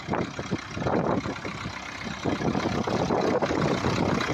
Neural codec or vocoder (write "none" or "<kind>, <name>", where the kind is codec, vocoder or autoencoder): none